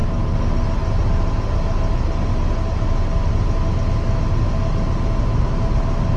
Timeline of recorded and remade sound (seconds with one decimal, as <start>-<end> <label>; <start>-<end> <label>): 0.0-6.2 recorded